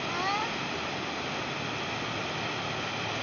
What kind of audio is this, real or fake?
real